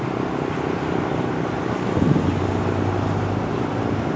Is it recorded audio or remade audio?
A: recorded